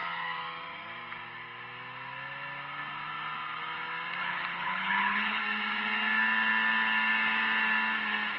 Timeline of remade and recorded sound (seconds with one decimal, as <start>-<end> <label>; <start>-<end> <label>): 0.0-4.2 recorded; 4.2-5.4 remade; 5.4-8.4 recorded